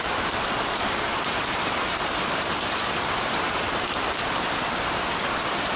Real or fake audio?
fake